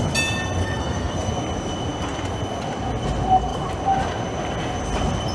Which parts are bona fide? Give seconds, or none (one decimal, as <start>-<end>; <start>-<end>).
0.0-0.6; 1.3-5.3